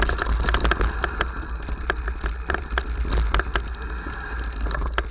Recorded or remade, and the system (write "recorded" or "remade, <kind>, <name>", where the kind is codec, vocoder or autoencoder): recorded